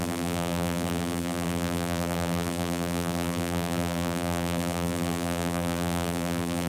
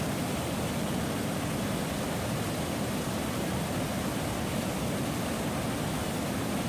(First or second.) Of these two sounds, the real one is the second